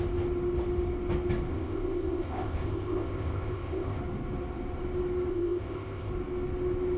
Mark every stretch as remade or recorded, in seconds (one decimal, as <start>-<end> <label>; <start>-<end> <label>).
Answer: 0.0-1.5 recorded; 1.5-4.0 remade; 4.0-5.3 recorded; 5.3-6.1 remade; 6.1-7.0 recorded